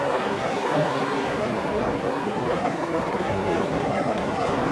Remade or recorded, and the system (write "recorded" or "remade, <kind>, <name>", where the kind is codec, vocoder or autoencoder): remade, codec, SNAC